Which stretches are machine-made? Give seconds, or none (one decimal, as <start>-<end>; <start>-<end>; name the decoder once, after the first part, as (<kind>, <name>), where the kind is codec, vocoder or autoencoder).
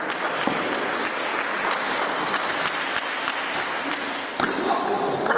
none